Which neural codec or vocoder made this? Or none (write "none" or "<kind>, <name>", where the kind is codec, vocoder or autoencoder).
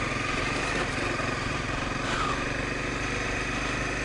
none